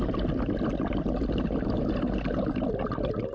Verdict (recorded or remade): recorded